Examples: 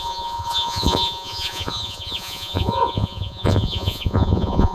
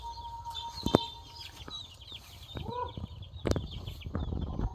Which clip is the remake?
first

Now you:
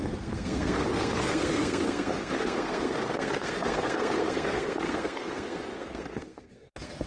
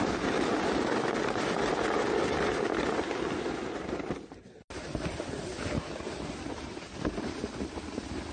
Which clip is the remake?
first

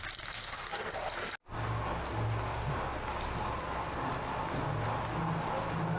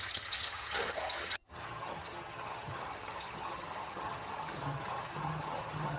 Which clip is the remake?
second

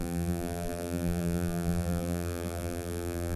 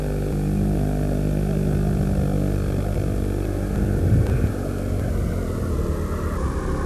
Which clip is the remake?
first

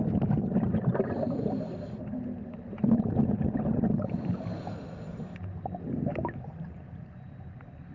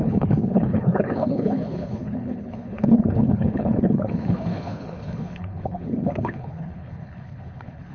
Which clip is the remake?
second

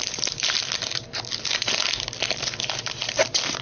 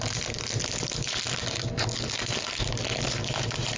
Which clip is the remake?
first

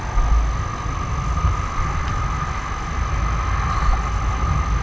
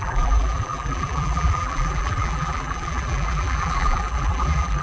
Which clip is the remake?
second